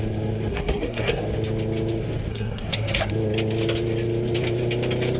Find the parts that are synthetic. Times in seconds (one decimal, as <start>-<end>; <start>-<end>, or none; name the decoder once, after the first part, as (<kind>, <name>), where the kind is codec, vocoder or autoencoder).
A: 0.5-1.2 (codec, SNAC); 2.3-3.1